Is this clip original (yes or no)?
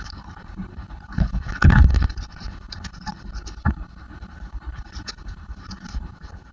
no